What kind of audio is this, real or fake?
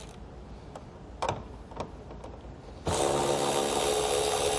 real